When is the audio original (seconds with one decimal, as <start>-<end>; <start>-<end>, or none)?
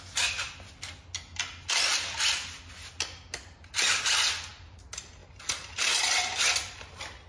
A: 0.0-7.3